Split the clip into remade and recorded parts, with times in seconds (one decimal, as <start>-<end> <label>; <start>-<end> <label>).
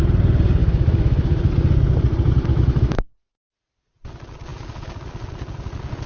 0.0-0.6 recorded; 0.6-1.5 remade; 1.5-2.5 recorded; 2.5-3.1 remade; 3.1-6.1 recorded